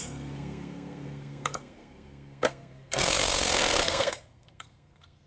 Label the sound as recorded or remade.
remade